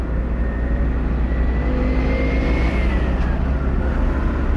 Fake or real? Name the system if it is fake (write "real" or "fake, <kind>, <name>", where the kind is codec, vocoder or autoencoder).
real